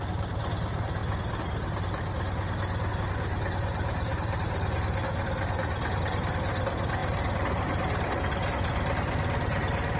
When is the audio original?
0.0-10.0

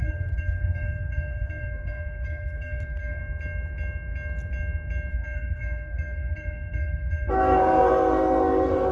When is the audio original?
3.2-5.1